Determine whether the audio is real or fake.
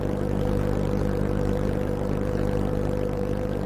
fake